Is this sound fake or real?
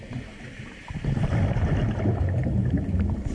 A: real